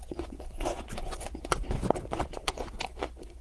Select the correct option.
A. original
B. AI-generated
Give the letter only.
B